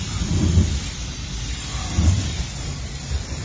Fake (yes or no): no